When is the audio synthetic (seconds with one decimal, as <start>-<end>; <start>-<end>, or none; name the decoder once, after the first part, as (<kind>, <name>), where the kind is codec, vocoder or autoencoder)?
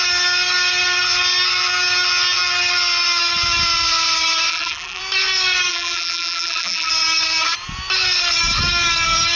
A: 4.5-5.0 (vocoder, BigVGAN v2); 5.7-6.9